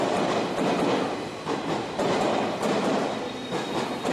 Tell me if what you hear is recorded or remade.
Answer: recorded